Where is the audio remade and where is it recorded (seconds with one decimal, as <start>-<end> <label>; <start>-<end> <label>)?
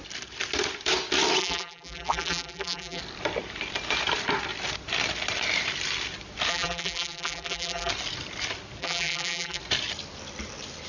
0.0-1.4 recorded; 1.4-3.0 remade; 3.0-6.5 recorded; 6.5-7.9 remade; 7.9-8.8 recorded; 8.8-9.6 remade; 9.6-10.9 recorded